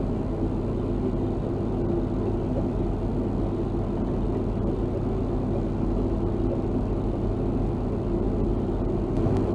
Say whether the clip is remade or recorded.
recorded